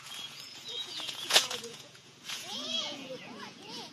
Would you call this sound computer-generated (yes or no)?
yes